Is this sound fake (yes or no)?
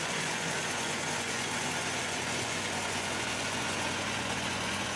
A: yes